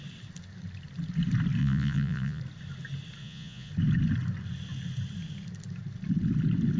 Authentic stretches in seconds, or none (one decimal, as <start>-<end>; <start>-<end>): 0.0-1.6; 2.4-3.2; 3.7-6.8